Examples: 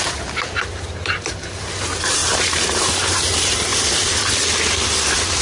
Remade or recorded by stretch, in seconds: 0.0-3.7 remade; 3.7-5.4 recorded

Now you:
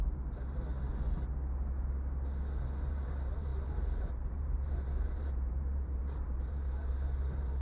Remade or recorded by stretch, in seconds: 0.0-0.7 remade; 0.7-2.9 recorded; 2.9-7.6 remade